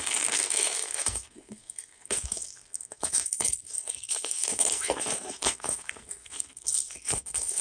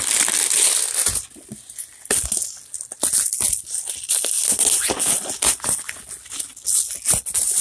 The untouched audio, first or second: second